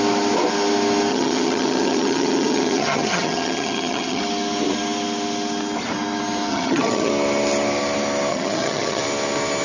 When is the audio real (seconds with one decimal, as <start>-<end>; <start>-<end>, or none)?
0.0-1.1; 4.2-6.5; 7.1-8.3; 9.0-9.6